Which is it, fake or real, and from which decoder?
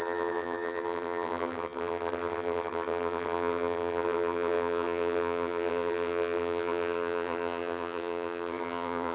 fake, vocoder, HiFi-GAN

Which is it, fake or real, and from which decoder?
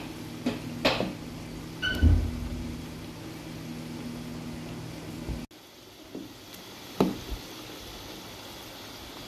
real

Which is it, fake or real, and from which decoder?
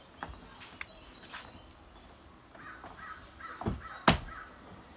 real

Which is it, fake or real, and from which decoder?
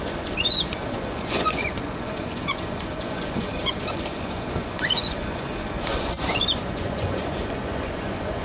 fake, vocoder, Vocos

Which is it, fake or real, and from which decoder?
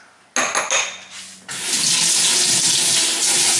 real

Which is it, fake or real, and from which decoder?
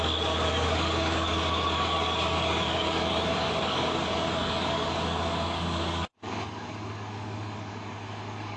fake, codec, DAC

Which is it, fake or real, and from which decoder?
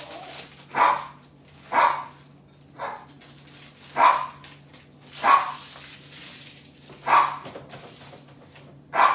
real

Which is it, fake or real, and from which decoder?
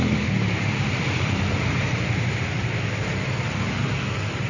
fake, vocoder, BigVGAN v2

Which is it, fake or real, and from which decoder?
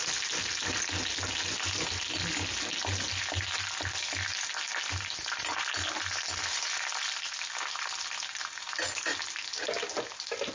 real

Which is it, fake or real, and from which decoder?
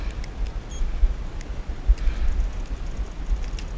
real